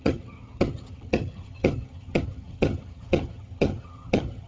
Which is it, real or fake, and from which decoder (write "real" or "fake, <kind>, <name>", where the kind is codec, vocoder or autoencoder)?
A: fake, vocoder, HiFi-GAN